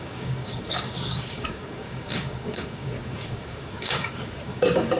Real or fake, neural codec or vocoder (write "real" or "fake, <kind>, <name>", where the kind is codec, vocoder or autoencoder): fake, codec, DAC